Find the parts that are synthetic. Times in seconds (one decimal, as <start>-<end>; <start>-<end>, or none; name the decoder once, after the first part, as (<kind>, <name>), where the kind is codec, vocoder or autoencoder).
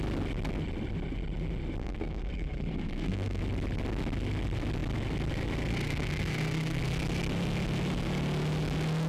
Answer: 1.8-3.4 (codec, SNAC); 5.7-6.8